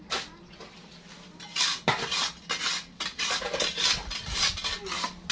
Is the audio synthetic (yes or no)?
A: no